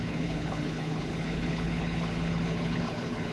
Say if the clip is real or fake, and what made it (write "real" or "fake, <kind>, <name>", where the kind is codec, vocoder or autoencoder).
fake, codec, HILCodec